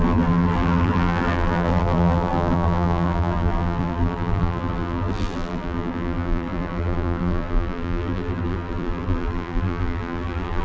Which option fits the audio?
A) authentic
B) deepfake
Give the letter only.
B